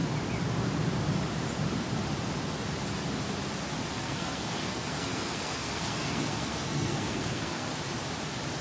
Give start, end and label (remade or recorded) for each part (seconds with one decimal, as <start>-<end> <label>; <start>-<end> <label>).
0.0-3.9 recorded; 3.9-7.8 remade; 7.8-8.6 recorded